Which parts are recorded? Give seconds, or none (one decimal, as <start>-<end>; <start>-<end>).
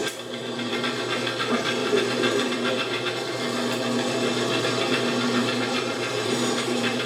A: 0.7-1.8; 3.1-5.4